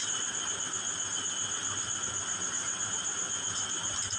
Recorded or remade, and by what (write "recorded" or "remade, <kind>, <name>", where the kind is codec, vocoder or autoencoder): recorded